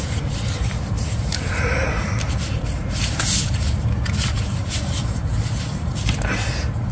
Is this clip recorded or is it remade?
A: remade